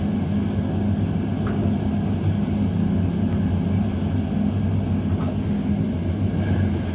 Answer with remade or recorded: recorded